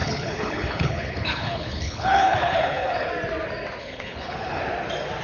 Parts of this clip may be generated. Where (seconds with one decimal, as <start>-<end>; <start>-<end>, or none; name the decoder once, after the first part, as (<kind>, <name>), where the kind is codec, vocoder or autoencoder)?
0.0-3.1 (codec, HILCodec); 3.8-4.6

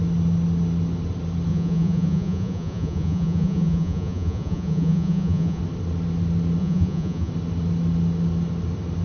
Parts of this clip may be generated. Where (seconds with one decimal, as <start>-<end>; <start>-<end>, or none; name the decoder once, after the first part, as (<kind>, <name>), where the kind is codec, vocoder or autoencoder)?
1.5-5.6 (vocoder, Vocos); 6.6-7.3

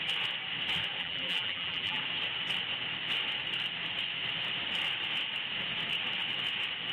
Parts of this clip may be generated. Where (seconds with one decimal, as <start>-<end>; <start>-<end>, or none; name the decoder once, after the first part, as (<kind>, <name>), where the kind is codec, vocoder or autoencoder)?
1.0-2.0 (vocoder, BigVGAN v2)

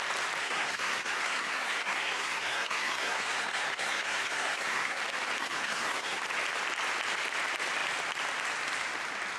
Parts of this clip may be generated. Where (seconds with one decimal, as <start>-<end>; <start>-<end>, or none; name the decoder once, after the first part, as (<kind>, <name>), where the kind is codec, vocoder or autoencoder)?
0.4-5.0 (codec, SNAC); 5.4-6.2

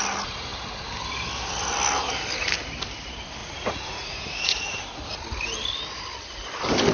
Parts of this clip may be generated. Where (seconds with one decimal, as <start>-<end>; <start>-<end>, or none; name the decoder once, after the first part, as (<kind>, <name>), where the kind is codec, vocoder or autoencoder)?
3.4-4.8 (vocoder, Vocos)

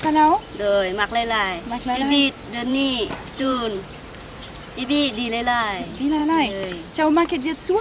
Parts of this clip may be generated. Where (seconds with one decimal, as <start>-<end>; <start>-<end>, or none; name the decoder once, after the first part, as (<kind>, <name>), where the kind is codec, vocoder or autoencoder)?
2.7-5.1 (vocoder, BigVGAN v2)

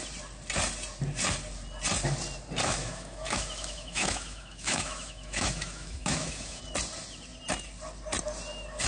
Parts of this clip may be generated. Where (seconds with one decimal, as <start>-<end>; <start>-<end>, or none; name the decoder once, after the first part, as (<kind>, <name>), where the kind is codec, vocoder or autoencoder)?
2.6-6.6 (autoencoder, DAC-VAE)